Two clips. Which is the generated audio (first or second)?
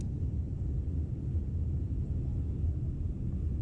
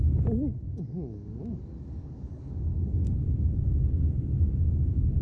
second